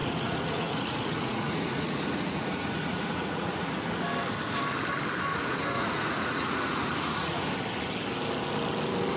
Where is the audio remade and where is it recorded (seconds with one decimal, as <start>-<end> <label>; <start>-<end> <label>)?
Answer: 0.0-3.7 remade; 3.7-5.3 recorded; 5.3-7.5 remade; 7.5-9.2 recorded